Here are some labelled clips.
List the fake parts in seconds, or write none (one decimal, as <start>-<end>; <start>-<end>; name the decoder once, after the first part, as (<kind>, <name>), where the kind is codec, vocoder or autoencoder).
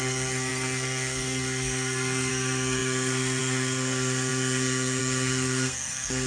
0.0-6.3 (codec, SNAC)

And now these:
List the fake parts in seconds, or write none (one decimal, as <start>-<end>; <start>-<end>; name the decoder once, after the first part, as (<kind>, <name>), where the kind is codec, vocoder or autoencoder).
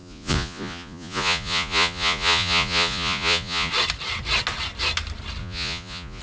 0.0-3.7 (vocoder, Vocos); 5.4-6.2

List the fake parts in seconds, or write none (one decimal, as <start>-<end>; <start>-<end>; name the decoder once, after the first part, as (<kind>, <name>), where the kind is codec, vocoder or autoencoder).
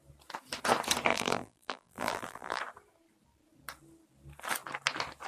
1.1-2.6 (vocoder, BigVGAN v2)